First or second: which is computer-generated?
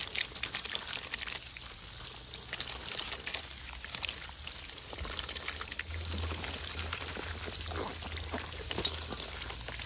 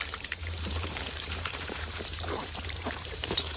second